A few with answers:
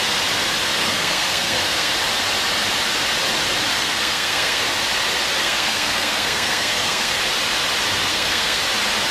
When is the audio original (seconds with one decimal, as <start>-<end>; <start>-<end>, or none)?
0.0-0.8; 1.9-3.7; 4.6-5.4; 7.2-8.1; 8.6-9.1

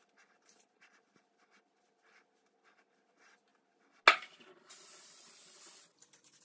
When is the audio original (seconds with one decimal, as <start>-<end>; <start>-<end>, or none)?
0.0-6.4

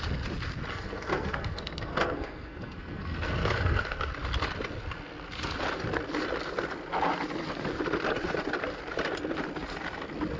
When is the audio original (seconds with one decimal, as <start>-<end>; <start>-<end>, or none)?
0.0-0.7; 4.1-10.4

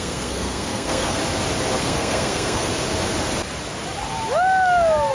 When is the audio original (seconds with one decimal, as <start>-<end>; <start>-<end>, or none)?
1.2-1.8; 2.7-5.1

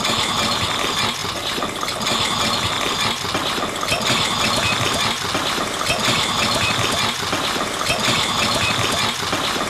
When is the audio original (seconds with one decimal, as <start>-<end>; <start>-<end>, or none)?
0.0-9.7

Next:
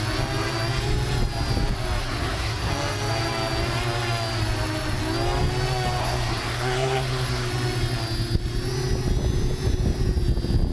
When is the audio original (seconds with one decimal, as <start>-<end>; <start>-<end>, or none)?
0.0-2.0; 2.7-6.0; 7.5-10.7

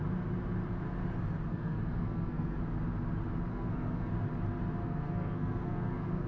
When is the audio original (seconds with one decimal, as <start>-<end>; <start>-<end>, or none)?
0.0-1.5; 2.6-3.5; 4.1-4.8

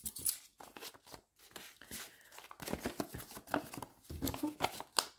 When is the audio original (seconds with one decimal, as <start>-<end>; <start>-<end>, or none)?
0.0-5.2